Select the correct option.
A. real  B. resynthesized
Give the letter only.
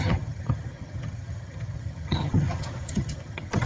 B